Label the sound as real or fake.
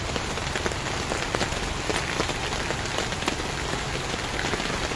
real